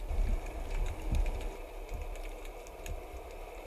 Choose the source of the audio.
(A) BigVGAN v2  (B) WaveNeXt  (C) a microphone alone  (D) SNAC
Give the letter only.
C